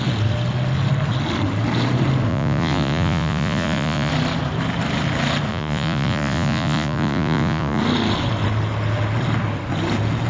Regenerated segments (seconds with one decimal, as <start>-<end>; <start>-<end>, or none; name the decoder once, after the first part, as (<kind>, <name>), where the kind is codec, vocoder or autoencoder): 2.3-4.1 (vocoder, Vocos); 5.5-7.8